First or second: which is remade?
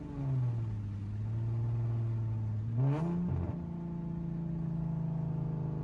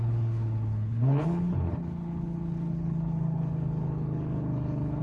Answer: second